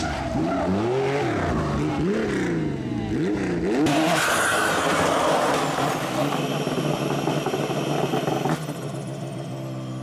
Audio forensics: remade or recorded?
recorded